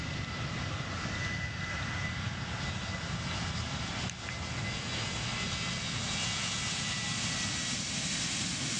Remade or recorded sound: recorded